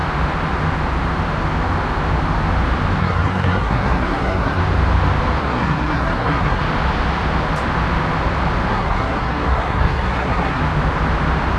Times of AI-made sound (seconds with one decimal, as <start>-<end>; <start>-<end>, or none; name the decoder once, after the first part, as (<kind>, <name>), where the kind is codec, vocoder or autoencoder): 3.0-4.6 (codec, SNAC); 5.4-6.6; 8.7-10.6